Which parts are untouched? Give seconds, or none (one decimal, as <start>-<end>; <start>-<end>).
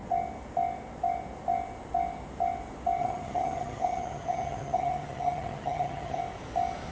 0.0-3.0; 6.2-6.9